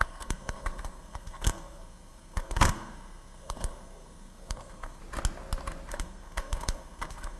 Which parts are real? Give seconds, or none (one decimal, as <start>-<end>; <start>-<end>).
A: 5.0-5.9

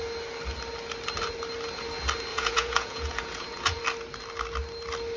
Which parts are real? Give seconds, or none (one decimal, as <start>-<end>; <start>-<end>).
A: 0.0-2.3; 3.8-5.2

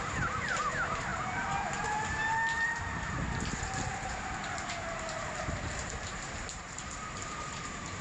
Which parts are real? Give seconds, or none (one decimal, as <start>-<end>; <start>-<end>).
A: none

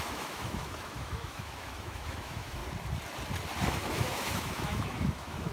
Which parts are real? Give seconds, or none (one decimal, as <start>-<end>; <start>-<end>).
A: 2.6-3.7